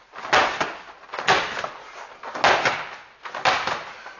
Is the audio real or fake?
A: real